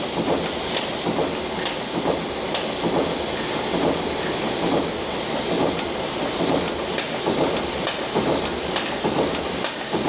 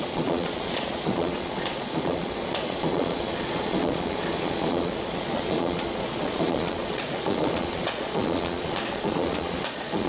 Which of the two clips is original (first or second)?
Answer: first